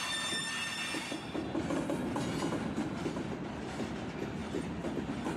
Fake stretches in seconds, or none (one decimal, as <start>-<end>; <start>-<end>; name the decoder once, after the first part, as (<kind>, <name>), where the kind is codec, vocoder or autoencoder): none

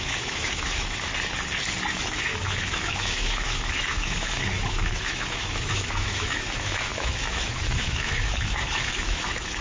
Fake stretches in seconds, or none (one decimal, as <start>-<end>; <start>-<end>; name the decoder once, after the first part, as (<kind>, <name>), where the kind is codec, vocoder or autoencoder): 0.0-1.1 (autoencoder, DAC-VAE); 1.9-9.6

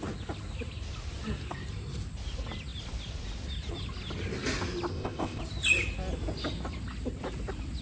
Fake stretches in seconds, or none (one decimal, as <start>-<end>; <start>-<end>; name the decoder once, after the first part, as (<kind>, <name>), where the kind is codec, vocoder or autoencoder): 4.9-5.4 (codec, ZipCodec)

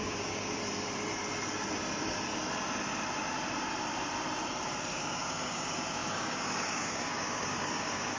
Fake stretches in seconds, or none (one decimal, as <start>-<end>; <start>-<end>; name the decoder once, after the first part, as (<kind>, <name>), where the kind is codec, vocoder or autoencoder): 0.0-0.6 (codec, DAC); 4.9-8.2

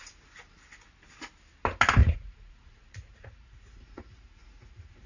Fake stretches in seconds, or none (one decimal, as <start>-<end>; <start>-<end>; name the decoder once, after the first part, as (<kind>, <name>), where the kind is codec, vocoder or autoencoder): 2.0-5.1 (vocoder, Vocos)

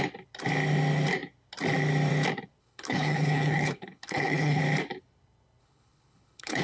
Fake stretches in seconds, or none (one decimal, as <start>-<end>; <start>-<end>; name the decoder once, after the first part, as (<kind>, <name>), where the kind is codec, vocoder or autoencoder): 2.6-4.6 (codec, HILCodec); 5.6-6.6

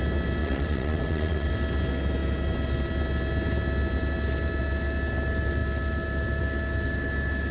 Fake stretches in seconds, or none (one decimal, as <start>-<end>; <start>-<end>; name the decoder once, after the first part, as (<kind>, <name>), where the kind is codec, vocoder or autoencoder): 0.4-1.5 (vocoder, WaveNeXt)

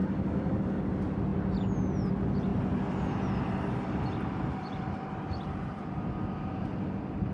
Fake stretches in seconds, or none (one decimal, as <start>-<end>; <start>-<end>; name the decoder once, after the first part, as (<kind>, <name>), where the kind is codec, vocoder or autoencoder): 0.0-0.9 (codec, DAC)